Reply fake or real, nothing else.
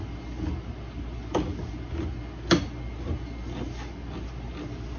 real